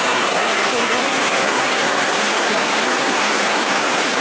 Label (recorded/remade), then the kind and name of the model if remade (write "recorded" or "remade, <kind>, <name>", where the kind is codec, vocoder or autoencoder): remade, codec, SNAC